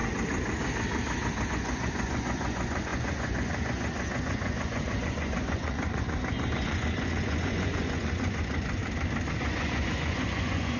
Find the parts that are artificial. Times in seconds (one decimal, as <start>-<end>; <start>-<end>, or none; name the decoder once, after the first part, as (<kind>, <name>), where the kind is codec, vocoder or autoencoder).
1.5-8.8 (vocoder, Vocos); 9.3-10.8